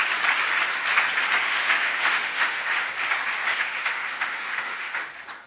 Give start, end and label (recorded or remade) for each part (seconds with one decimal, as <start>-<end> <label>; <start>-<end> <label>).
0.0-1.4 recorded; 1.4-2.9 remade; 2.9-3.5 recorded; 3.5-5.0 remade; 5.0-5.5 recorded